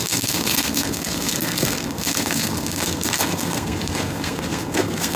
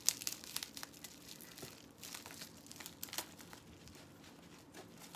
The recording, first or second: second